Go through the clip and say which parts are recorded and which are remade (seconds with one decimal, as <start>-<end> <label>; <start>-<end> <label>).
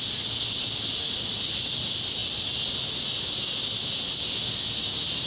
0.0-5.3 recorded